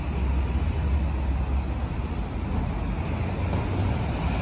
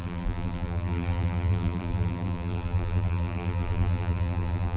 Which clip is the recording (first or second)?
first